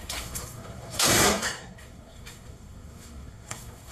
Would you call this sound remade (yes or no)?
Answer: yes